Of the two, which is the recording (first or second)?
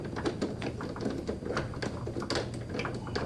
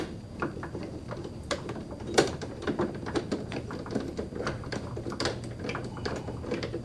first